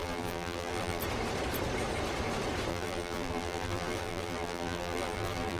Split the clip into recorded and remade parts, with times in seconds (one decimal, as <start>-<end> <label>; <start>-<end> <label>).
0.0-1.0 remade; 1.0-2.7 recorded; 2.7-5.6 remade